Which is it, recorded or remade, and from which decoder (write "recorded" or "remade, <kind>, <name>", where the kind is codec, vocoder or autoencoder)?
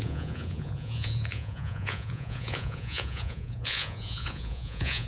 remade, vocoder, Vocos